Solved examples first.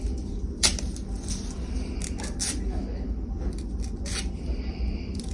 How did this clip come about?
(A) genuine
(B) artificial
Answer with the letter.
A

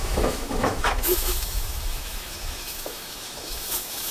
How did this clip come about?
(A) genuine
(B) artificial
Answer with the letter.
B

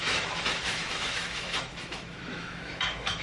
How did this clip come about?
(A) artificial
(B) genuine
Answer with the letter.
A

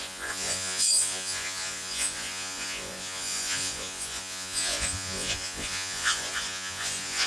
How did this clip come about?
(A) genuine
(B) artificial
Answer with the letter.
B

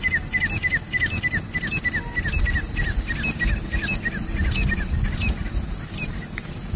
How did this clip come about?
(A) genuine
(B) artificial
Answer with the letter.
A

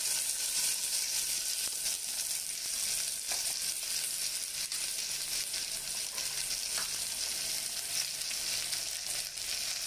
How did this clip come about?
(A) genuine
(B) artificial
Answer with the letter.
A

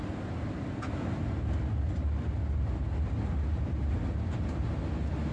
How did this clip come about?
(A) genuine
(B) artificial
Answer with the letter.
A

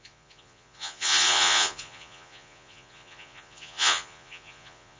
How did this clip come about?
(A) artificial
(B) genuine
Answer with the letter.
A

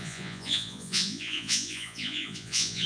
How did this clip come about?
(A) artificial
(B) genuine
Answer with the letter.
A